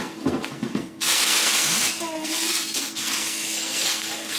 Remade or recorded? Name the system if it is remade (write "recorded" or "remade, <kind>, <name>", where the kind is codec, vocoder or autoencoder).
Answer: remade, codec, SNAC